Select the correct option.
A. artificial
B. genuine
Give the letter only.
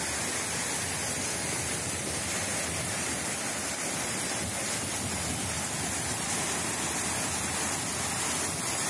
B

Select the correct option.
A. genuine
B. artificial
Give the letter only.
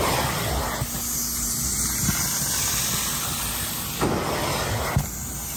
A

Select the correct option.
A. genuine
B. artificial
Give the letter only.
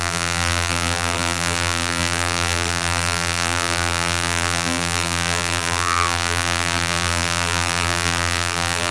B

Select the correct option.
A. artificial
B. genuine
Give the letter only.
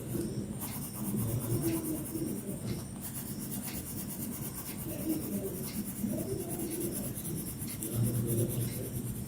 B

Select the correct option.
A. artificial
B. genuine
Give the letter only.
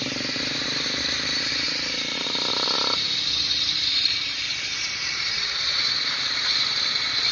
A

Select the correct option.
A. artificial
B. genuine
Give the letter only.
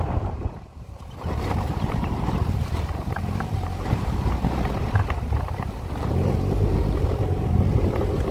A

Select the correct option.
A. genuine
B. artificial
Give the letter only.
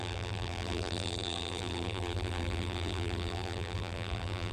B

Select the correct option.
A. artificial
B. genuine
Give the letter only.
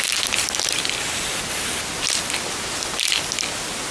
B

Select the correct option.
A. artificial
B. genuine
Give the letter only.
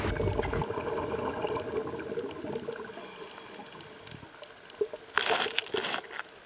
B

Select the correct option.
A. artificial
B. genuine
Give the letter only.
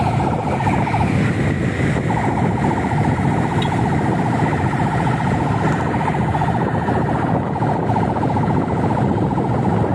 B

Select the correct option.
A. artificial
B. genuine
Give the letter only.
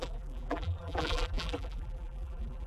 A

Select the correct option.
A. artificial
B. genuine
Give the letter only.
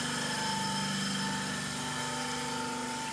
B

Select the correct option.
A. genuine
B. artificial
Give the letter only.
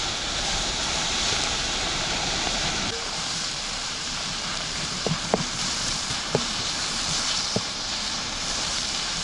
B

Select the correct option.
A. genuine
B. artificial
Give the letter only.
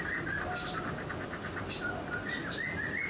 A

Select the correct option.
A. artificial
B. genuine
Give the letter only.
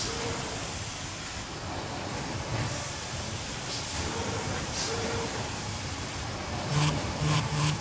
A